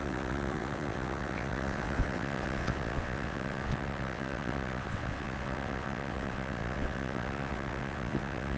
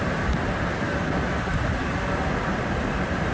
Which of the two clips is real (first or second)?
second